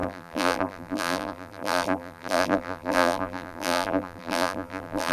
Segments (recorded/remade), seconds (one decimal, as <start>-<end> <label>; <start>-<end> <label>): 0.0-5.1 remade